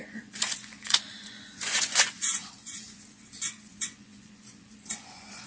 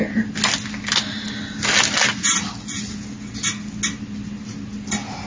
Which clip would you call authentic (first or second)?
second